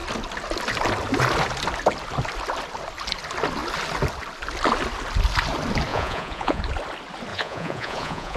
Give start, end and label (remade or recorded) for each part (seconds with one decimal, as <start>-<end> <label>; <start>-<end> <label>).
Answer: 0.0-5.9 recorded; 5.9-6.6 remade; 6.6-7.3 recorded; 7.3-8.4 remade